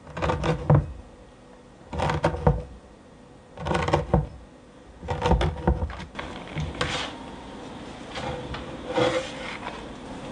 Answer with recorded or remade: recorded